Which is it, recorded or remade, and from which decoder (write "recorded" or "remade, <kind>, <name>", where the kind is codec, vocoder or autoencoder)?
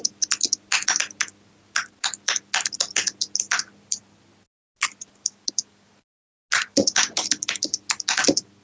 recorded